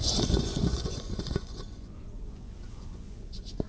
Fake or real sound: fake